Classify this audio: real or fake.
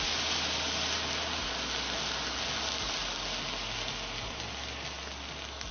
real